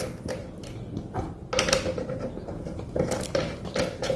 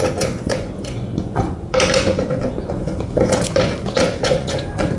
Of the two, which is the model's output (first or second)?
second